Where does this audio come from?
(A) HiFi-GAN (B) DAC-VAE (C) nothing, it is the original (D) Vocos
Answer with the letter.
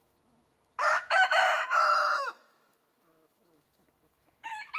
B